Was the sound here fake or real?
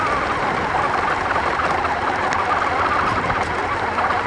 real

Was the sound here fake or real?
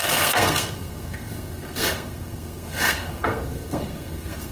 fake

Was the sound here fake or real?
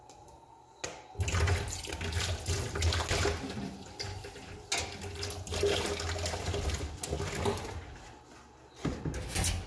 real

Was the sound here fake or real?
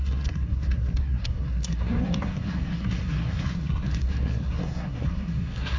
fake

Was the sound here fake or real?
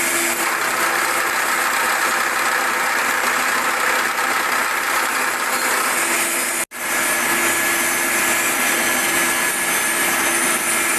real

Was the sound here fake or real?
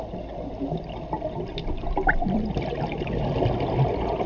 real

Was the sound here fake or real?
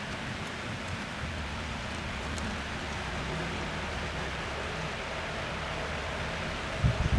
real